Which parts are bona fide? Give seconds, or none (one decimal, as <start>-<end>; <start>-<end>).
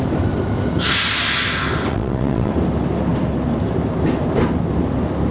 0.0-1.9; 2.5-5.3